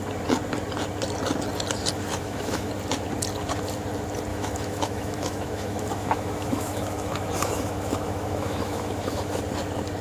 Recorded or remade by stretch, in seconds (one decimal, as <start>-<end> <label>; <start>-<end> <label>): 0.0-2.1 recorded; 2.1-2.7 remade; 2.7-4.3 recorded; 4.3-9.4 remade; 9.4-10.0 recorded